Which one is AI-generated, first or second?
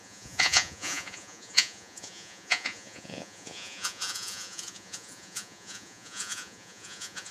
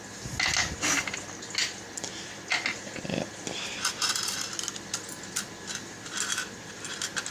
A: first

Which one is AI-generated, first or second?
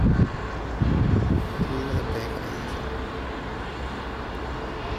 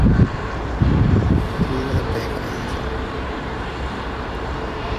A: second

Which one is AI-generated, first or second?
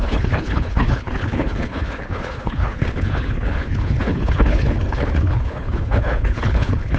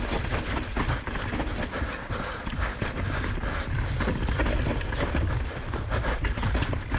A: first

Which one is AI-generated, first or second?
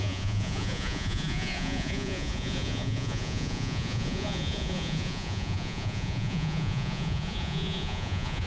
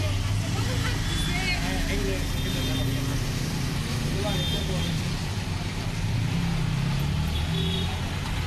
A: first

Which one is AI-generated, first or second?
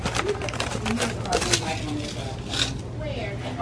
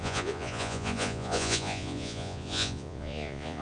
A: second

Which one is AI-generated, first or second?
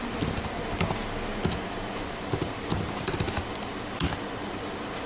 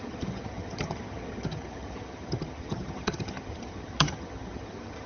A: second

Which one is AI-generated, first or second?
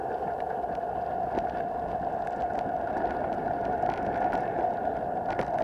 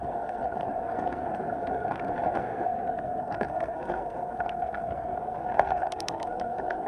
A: second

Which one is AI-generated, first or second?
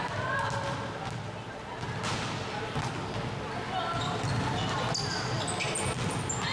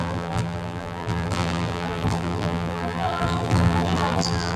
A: second